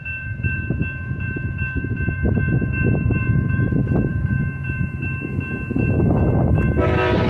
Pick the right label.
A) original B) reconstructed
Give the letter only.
B